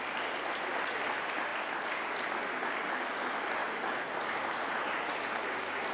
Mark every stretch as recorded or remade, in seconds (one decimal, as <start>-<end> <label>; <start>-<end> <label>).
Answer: 0.0-3.6 recorded; 3.6-5.1 remade; 5.1-5.9 recorded